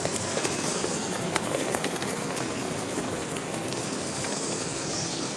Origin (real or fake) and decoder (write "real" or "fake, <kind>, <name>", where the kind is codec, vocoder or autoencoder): fake, codec, SNAC